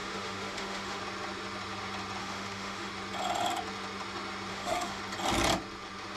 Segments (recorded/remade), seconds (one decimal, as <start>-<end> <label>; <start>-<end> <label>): 0.0-1.0 remade; 1.0-2.2 recorded; 2.2-2.9 remade; 2.9-4.5 recorded; 4.5-5.0 remade; 5.0-6.2 recorded